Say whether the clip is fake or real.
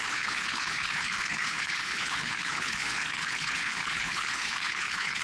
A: fake